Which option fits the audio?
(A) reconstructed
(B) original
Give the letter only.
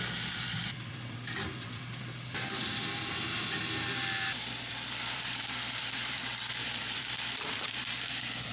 A